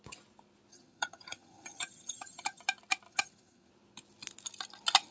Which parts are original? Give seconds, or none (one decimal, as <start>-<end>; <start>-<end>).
0.0-0.7; 2.6-3.1; 3.7-5.1